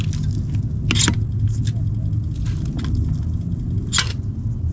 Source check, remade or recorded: recorded